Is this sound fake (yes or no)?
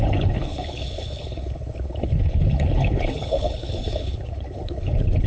yes